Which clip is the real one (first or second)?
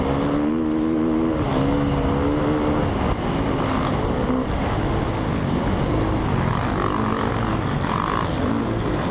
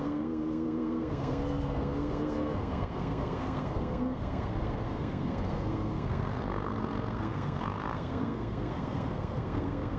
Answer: first